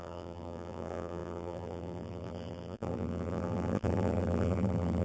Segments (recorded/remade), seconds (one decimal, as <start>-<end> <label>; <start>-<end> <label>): 0.0-5.0 remade